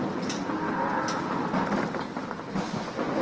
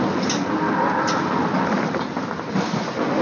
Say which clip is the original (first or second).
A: first